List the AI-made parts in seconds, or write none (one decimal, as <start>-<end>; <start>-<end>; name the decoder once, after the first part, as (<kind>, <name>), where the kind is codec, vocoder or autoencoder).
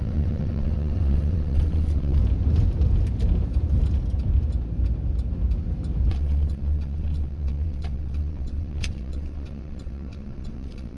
0.0-2.2 (vocoder, WaveNeXt); 6.1-11.0